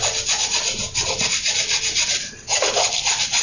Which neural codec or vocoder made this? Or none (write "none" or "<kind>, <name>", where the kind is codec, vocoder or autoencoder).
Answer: none